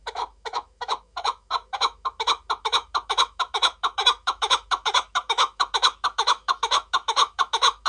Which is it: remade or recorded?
remade